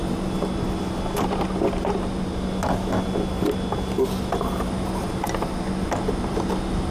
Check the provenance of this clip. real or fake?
real